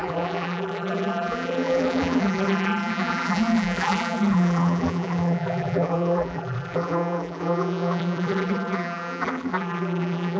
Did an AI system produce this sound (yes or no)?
yes